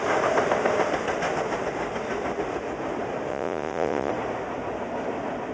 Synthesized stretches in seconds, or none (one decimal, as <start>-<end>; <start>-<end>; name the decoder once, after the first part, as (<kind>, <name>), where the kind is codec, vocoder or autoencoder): 3.3-4.1 (vocoder, Vocos)